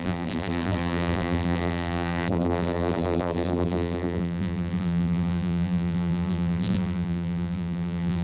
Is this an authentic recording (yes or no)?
no